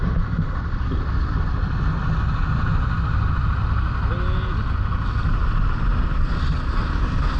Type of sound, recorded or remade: recorded